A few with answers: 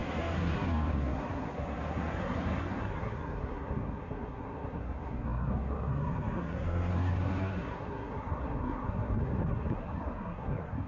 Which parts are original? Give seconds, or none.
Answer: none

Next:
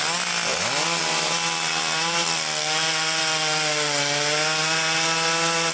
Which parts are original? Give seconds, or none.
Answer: 0.0-5.7

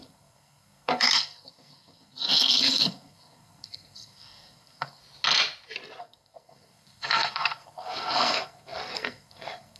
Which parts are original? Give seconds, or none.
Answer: 5.0-6.0

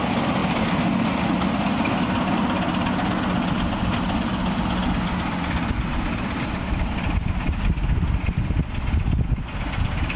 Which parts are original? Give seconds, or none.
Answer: 0.0-10.2

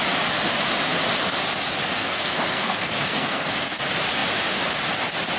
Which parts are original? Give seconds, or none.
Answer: 0.0-2.0; 3.8-5.4